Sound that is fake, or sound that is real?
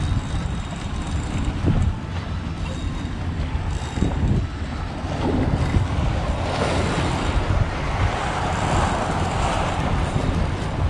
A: real